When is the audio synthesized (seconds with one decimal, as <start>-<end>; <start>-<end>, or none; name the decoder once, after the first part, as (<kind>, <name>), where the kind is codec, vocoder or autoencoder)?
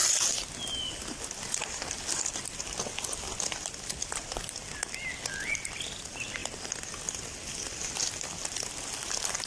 none